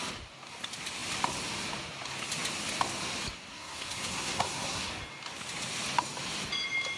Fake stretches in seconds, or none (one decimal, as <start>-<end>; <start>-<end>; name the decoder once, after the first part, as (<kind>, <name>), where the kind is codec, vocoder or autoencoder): 3.5-4.9 (codec, SNAC)